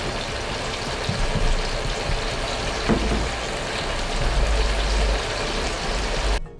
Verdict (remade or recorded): recorded